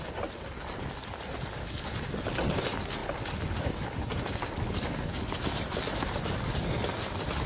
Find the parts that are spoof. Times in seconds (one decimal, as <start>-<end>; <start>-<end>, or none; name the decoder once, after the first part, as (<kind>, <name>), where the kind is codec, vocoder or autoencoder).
none